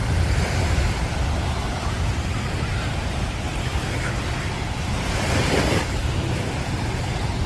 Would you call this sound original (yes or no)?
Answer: yes